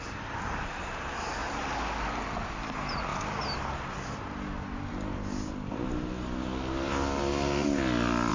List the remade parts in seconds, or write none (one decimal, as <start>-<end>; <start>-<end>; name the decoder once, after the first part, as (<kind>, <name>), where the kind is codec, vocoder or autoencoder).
none

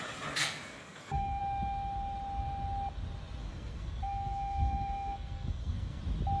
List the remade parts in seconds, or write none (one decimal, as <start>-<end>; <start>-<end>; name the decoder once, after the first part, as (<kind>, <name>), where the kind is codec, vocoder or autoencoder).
0.4-1.4 (codec, SNAC); 3.4-6.0

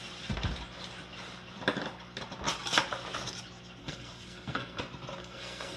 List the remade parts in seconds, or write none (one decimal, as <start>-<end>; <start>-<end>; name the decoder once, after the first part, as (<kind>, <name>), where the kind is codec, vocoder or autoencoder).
3.8-4.8 (codec, SNAC); 5.2-5.8

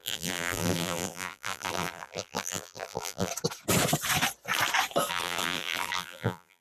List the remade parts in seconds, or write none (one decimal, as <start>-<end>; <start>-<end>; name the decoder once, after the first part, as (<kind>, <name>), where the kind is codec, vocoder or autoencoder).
0.0-3.3 (vocoder, BigVGAN v2); 5.1-6.6

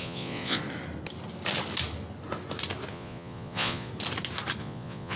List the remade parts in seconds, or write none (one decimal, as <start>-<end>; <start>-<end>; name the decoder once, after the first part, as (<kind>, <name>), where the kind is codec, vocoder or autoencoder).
0.0-0.6 (vocoder, Vocos); 2.9-3.9; 4.6-5.2

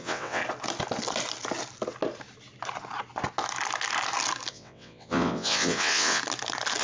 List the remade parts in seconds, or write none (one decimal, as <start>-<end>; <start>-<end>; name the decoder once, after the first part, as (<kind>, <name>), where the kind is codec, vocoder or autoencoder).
0.0-0.4 (vocoder, WaveNeXt); 4.5-6.2